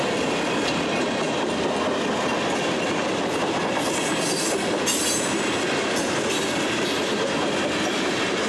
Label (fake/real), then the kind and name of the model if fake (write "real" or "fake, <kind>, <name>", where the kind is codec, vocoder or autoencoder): real